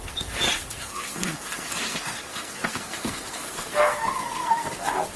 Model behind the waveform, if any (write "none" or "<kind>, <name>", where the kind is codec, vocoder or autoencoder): codec, SNAC